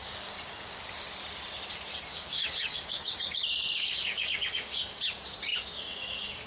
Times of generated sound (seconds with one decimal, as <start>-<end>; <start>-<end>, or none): 0.0-0.8; 2.1-5.0; 5.5-6.5